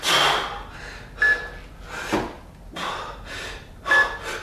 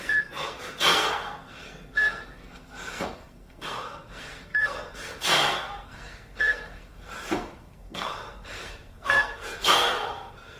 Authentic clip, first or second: first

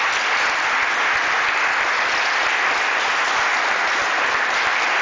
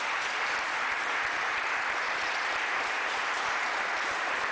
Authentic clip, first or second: first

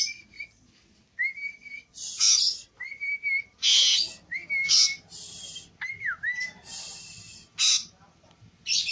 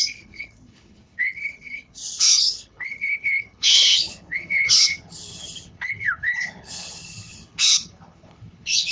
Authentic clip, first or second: first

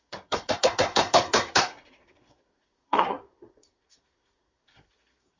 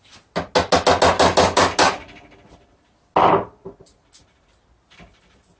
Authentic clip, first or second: second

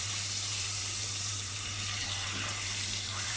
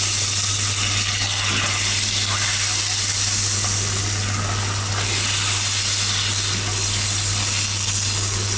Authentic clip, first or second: second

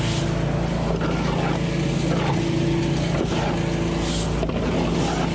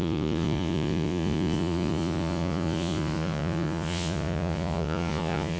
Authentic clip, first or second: first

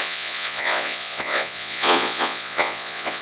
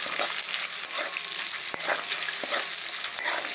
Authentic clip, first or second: second